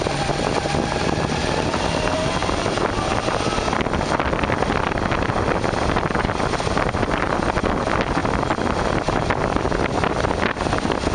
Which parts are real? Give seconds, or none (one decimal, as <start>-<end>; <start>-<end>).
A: 0.0-11.1